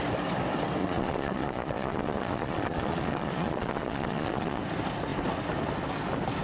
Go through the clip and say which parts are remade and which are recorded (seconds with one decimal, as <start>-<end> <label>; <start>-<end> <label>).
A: 0.0-0.8 recorded; 0.8-4.6 remade; 4.6-6.4 recorded